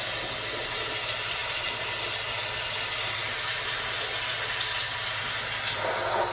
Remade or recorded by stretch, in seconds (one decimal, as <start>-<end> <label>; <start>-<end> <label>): 0.0-1.4 recorded; 1.4-2.0 remade; 2.0-6.3 recorded